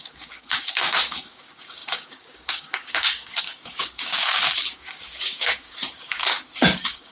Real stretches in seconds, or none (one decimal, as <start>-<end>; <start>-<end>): none